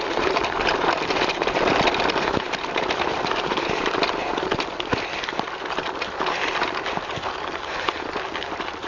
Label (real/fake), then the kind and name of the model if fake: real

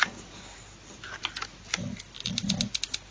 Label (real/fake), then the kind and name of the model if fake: real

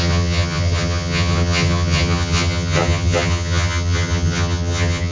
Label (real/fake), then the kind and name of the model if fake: fake, vocoder, HiFi-GAN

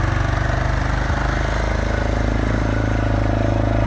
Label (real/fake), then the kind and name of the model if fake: real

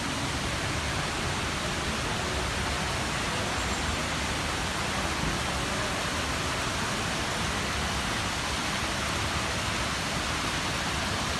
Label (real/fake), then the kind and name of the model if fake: real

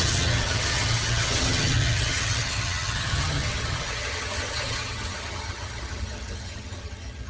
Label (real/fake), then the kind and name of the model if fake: fake, vocoder, HiFi-GAN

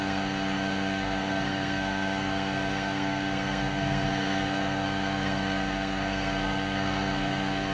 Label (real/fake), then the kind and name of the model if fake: fake, codec, SNAC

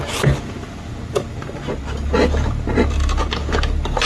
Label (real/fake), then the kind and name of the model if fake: real